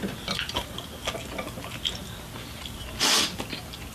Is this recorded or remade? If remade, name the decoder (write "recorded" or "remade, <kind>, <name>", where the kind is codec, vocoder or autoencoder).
recorded